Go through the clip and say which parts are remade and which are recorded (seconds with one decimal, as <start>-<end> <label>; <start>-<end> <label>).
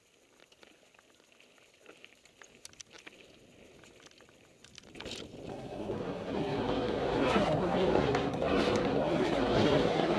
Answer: 0.0-5.5 recorded; 5.5-10.2 remade